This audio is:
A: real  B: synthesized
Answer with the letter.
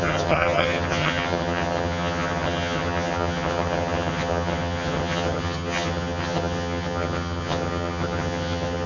B